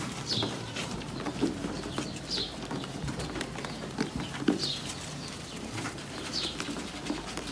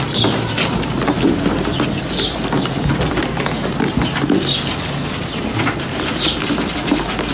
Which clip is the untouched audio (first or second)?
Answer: second